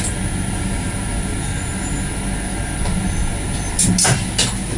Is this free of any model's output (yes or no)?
yes